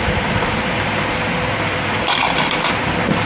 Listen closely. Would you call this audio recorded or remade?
recorded